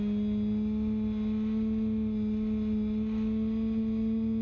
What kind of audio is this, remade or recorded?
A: recorded